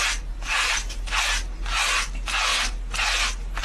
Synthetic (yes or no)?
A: no